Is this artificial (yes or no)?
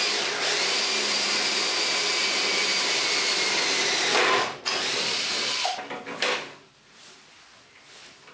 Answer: yes